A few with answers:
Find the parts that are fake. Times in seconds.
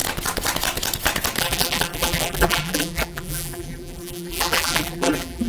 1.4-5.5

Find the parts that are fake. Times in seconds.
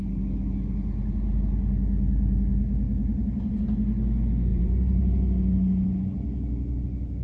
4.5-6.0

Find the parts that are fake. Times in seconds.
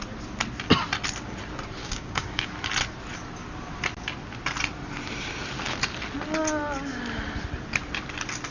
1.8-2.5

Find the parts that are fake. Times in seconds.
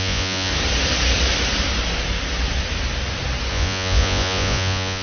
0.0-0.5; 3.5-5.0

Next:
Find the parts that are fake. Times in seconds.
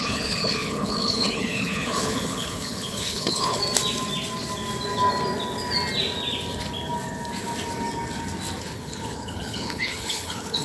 0.0-3.6; 8.6-10.6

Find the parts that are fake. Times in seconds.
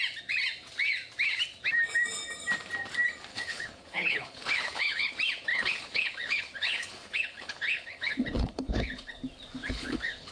3.3-5.1; 5.5-9.2; 9.6-10.3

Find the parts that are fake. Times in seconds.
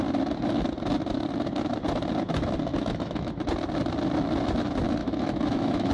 2.7-3.3; 5.0-5.9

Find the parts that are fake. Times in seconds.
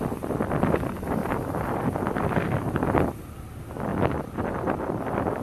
none